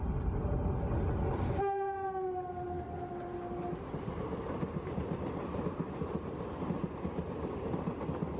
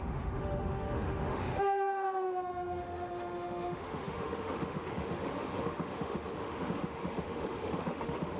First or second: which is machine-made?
second